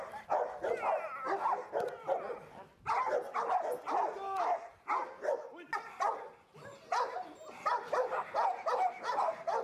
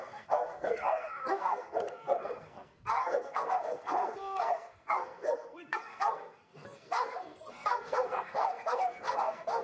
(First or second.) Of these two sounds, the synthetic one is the second